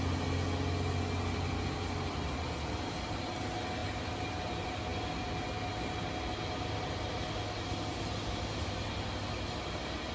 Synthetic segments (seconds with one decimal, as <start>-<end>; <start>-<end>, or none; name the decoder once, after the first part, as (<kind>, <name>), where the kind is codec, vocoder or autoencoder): none